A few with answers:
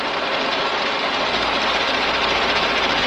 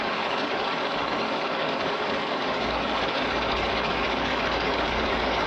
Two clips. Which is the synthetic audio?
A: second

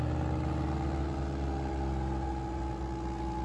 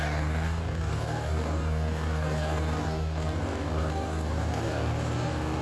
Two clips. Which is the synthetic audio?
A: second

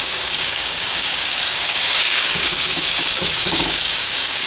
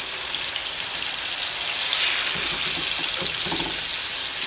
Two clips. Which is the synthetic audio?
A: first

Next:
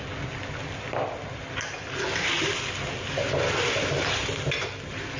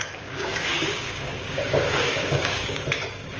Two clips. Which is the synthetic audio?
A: second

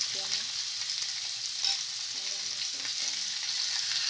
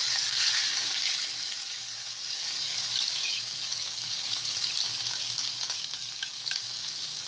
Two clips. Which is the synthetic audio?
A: second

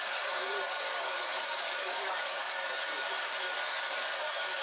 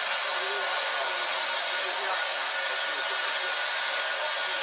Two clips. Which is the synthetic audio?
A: first